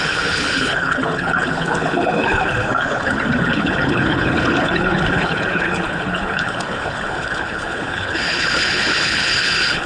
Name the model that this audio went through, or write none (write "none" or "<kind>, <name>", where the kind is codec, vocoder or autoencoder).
codec, HILCodec